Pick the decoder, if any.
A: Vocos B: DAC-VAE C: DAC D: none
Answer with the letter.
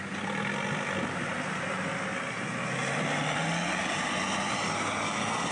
D